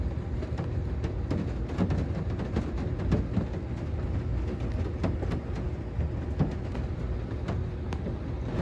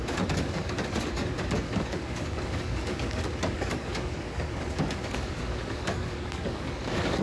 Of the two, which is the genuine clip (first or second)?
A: first